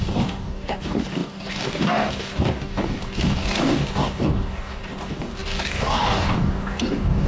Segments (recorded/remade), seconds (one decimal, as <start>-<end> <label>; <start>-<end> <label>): 0.0-7.3 remade

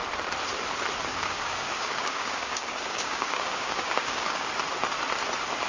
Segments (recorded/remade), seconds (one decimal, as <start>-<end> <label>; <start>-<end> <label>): 0.0-1.1 recorded; 1.1-4.5 remade; 4.5-5.7 recorded

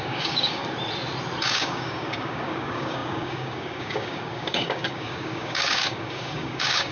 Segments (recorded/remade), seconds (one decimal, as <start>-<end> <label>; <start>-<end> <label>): 0.0-0.6 remade; 0.6-1.4 recorded; 1.4-6.9 remade

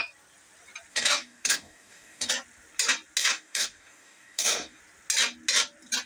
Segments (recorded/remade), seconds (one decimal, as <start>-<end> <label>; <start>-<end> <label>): 0.0-0.9 recorded; 0.9-2.3 remade; 2.3-3.2 recorded; 3.2-4.8 remade; 4.8-6.1 recorded

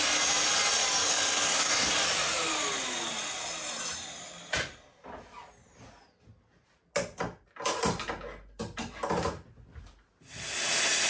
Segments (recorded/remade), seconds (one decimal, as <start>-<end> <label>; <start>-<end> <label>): 0.0-0.8 recorded; 0.8-1.9 remade; 1.9-11.1 recorded

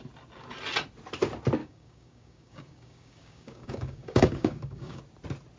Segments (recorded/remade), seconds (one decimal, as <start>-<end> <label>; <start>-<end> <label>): 0.0-1.6 recorded; 1.6-5.0 remade; 5.0-5.6 recorded

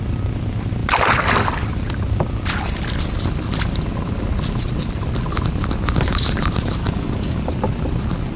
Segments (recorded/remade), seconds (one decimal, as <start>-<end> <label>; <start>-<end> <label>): 0.0-6.8 recorded; 6.8-7.4 remade; 7.4-8.4 recorded

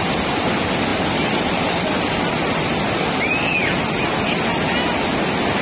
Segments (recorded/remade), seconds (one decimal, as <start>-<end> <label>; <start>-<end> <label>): 0.0-5.6 recorded